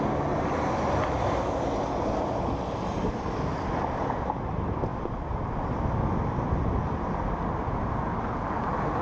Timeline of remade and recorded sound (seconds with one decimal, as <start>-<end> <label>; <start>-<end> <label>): 0.0-9.0 recorded